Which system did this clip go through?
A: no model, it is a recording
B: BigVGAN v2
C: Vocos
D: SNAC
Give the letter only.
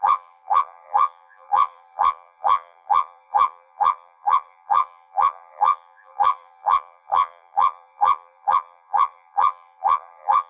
B